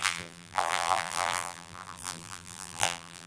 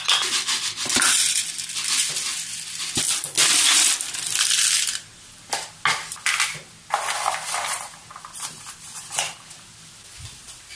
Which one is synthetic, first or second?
first